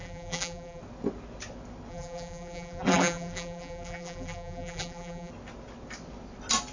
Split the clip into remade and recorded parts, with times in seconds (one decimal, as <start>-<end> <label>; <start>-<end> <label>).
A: 0.0-0.8 remade; 0.8-1.9 recorded; 1.9-5.3 remade; 5.3-6.7 recorded